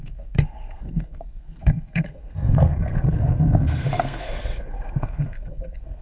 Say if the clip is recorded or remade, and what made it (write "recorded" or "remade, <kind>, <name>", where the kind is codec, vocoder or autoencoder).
remade, codec, SNAC